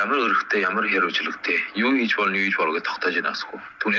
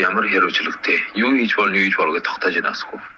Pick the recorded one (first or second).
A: first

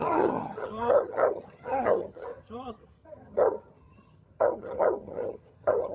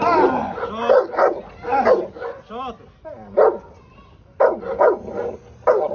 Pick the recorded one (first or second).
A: second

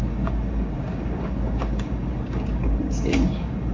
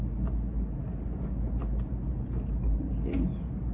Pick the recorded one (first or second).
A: second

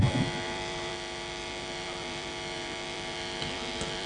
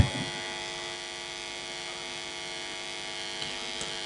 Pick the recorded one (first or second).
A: second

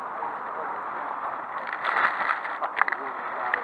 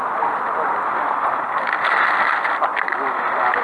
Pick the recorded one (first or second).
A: second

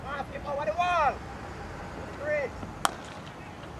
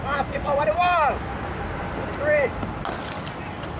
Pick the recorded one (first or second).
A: first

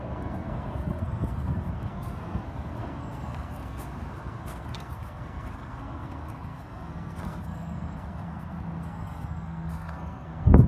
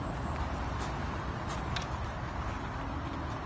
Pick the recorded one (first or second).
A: second